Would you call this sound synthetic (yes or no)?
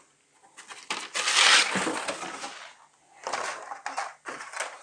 no